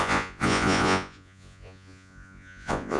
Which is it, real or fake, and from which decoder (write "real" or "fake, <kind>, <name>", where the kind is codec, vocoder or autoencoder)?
fake, vocoder, Vocos